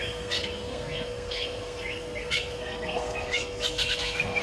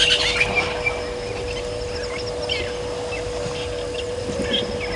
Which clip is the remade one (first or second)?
first